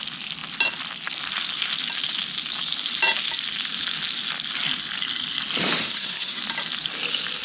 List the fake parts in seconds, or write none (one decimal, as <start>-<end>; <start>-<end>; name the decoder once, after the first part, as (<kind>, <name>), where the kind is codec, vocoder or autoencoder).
5.8-6.4 (codec, SNAC)